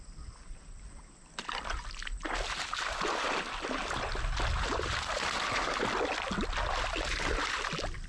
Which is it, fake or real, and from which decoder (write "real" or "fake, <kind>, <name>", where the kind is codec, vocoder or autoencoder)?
real